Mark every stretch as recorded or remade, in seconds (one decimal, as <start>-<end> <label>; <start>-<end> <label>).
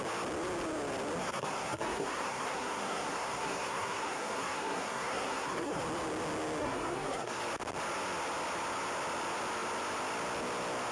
0.0-1.2 recorded; 1.2-5.8 remade; 5.8-6.6 recorded; 6.6-7.4 remade; 7.4-10.9 recorded